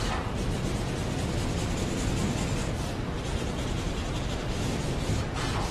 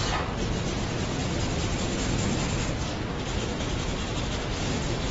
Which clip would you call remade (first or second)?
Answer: first